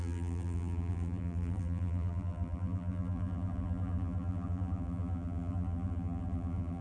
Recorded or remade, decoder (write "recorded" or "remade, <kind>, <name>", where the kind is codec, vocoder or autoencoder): remade, vocoder, BigVGAN v2